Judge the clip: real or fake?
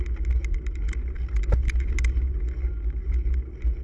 real